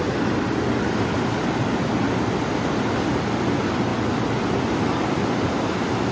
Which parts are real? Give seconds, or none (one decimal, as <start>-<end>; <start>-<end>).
0.0-6.1